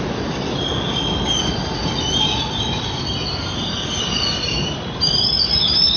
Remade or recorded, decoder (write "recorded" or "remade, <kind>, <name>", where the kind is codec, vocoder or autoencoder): recorded